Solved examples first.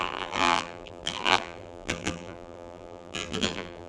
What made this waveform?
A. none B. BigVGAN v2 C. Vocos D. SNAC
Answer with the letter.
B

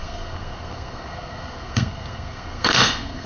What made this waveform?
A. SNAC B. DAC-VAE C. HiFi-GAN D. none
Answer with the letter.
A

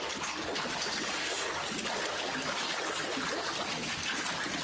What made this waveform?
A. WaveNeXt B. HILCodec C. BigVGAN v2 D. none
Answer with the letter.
D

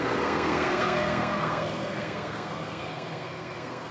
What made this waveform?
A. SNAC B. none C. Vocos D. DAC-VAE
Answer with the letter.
A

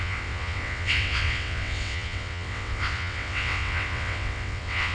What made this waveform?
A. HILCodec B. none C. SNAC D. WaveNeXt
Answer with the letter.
D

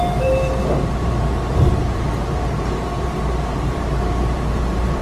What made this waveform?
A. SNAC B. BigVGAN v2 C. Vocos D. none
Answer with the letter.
B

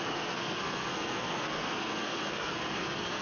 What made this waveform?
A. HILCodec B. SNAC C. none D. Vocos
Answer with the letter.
B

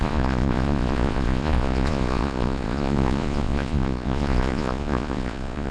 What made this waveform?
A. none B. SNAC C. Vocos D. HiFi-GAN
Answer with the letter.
C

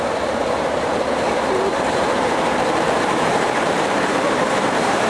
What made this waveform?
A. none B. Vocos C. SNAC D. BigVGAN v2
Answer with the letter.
D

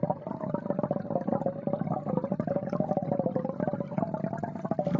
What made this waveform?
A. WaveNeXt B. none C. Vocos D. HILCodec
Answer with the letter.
B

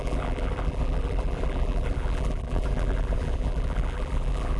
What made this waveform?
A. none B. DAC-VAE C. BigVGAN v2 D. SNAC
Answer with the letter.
C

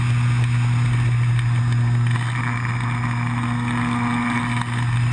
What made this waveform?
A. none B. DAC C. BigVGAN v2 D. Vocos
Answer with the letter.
A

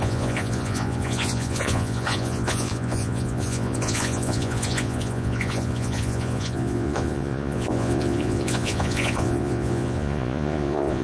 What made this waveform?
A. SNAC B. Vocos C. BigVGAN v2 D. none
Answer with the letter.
B